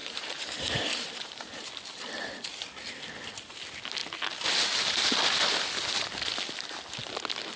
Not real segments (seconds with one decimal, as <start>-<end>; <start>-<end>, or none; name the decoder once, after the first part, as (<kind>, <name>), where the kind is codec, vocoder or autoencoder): 0.0-1.7 (vocoder, BigVGAN v2)